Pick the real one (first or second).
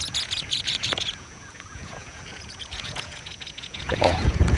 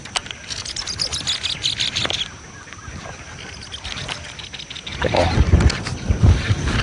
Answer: second